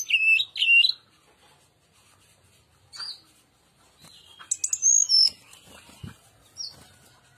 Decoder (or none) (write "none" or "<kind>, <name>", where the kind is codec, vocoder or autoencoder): none